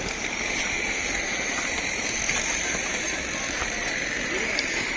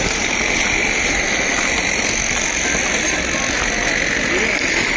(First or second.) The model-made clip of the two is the first